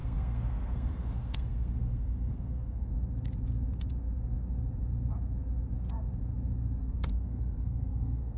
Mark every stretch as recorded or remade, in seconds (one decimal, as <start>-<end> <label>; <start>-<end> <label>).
0.0-2.9 remade; 2.9-6.8 recorded; 6.8-8.4 remade